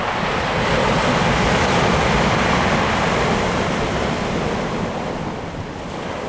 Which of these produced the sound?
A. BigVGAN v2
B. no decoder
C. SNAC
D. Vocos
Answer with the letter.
A